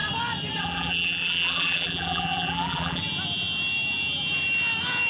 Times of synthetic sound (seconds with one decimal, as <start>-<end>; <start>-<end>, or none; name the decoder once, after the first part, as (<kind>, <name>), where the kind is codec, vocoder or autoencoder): 0.6-3.0 (vocoder, BigVGAN v2)